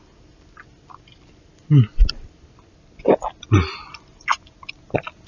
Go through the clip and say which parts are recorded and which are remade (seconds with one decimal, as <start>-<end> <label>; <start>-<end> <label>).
0.0-5.3 recorded